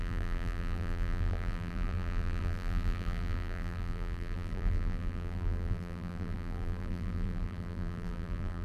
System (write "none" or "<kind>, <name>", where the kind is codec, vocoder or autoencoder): vocoder, BigVGAN v2